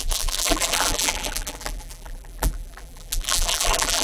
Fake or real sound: fake